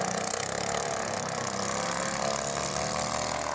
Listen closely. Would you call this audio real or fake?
real